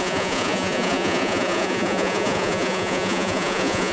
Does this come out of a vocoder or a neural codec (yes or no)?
yes